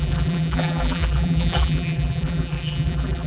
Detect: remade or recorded remade